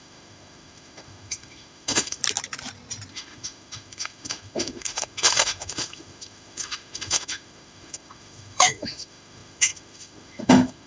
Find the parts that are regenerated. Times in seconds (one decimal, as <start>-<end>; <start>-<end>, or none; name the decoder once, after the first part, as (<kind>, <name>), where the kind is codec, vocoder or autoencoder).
0.0-2.2 (autoencoder, DAC-VAE); 3.1-10.9